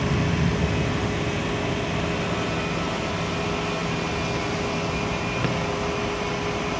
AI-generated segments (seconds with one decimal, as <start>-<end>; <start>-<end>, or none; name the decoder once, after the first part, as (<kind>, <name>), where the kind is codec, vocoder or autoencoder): none